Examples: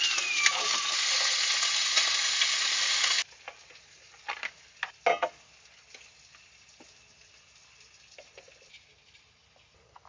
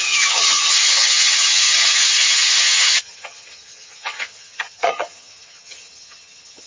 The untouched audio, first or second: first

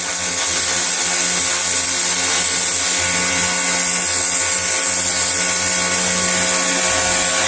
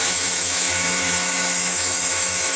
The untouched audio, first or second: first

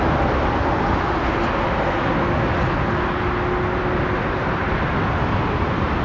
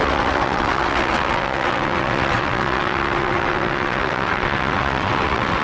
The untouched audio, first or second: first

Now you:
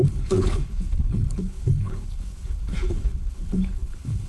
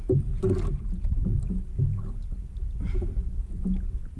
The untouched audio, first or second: second